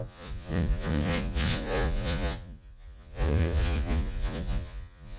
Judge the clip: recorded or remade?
remade